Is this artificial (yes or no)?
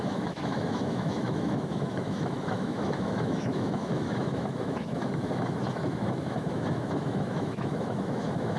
yes